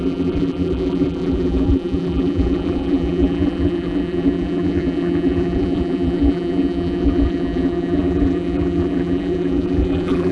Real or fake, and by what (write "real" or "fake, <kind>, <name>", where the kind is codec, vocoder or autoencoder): fake, vocoder, BigVGAN v2